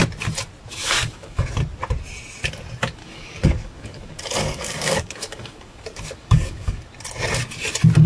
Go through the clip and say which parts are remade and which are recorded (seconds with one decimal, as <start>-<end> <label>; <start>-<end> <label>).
0.0-0.7 recorded; 0.7-1.5 remade; 1.5-3.0 recorded; 3.0-6.8 remade; 6.8-8.1 recorded